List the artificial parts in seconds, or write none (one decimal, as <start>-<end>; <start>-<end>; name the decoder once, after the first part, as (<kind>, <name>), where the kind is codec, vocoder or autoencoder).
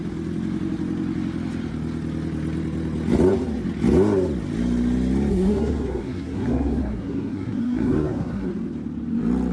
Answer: 5.3-8.5 (codec, SNAC)